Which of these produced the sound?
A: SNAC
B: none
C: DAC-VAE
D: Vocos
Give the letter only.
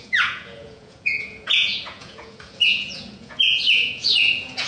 D